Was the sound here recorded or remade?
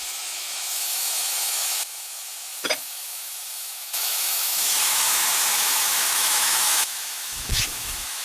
remade